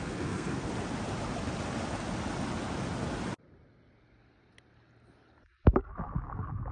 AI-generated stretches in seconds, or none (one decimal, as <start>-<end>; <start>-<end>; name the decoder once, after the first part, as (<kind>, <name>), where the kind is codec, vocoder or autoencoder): 0.0-0.7 (codec, SNAC)